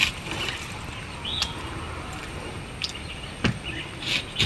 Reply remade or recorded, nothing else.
recorded